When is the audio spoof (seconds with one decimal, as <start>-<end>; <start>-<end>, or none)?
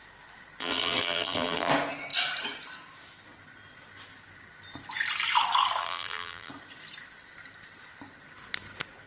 0.6-1.7; 5.8-6.5